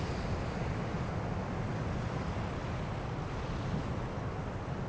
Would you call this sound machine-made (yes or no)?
no